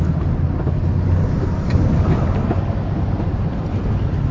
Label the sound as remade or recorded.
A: recorded